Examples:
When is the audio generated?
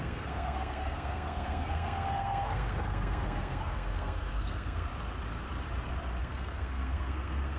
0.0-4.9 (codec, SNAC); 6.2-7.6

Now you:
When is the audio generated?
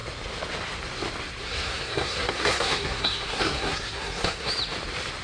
1.4-4.5 (codec, SNAC)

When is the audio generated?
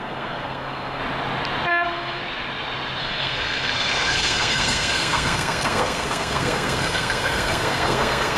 0.0-1.0 (codec, SNAC); 1.7-2.2; 3.0-8.4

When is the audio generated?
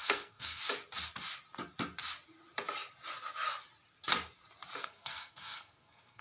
0.0-0.6 (codec, SNAC); 4.8-6.2